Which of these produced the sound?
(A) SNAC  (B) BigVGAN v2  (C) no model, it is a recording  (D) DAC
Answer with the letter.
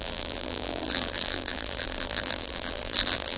B